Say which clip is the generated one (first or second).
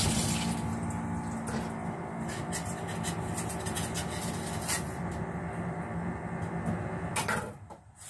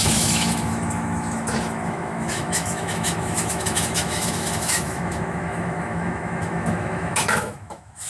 second